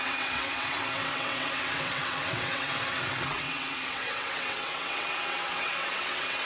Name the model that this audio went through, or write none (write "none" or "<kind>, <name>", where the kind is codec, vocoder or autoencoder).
vocoder, WaveNeXt